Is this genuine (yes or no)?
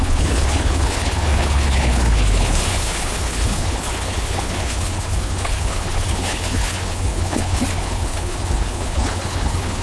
no